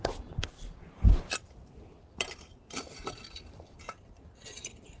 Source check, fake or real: real